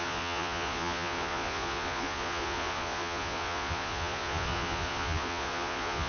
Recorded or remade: remade